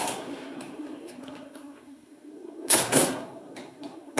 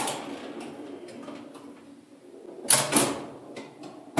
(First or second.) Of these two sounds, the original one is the second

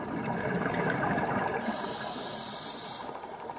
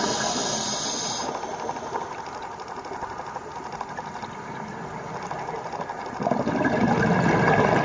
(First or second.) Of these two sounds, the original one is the second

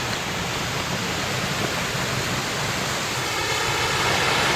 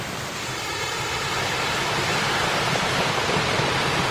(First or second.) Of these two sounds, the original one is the first